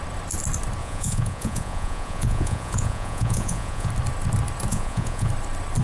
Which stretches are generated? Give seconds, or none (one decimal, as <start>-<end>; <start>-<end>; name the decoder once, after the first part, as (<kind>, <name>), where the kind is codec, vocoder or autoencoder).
0.8-3.9 (vocoder, Vocos); 4.7-5.3